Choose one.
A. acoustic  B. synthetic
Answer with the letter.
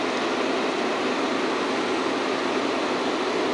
A